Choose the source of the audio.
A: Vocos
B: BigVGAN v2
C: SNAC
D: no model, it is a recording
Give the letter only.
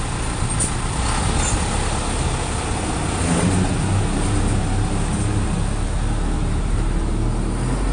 D